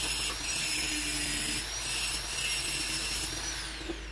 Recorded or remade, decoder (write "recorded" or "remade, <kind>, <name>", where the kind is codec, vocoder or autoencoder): recorded